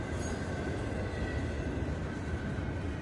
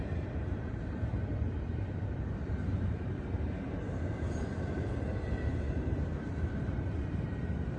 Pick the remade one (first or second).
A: second